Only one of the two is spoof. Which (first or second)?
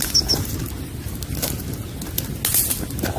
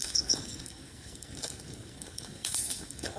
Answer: second